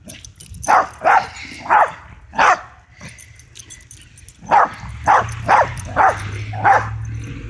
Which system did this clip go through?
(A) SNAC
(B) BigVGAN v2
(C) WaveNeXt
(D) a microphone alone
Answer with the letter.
D